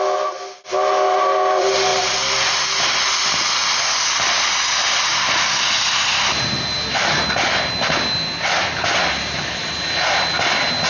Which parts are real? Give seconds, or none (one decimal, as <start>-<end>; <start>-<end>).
0.0-1.9; 2.8-10.9